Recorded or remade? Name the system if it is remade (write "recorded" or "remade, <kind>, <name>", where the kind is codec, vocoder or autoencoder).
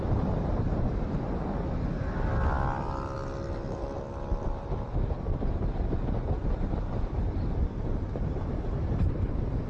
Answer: recorded